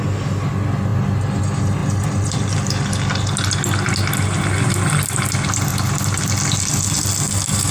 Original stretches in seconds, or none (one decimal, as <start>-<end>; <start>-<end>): 0.0-1.8; 2.7-5.7; 6.3-7.7